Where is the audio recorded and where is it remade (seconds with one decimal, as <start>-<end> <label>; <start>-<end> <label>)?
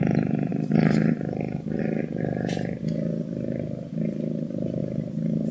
0.0-0.5 recorded; 0.5-1.8 remade; 1.8-4.8 recorded; 4.8-5.5 remade